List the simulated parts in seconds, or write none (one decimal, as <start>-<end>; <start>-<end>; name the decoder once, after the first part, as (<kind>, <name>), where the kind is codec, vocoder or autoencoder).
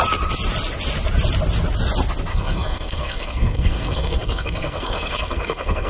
2.3-5.9 (codec, SNAC)